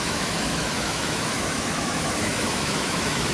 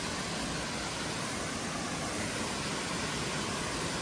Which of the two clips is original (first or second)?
second